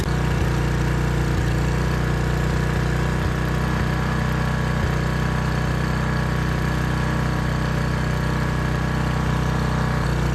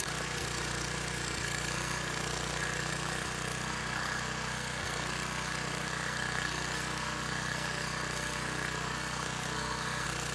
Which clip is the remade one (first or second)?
second